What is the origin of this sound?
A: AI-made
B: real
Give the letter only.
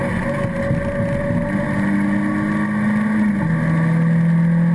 B